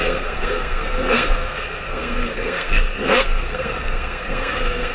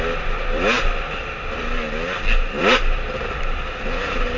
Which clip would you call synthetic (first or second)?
first